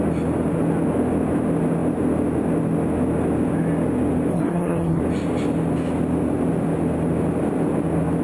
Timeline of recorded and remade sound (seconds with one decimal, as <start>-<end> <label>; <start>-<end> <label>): 0.0-4.3 recorded; 4.3-5.0 remade; 5.0-8.2 recorded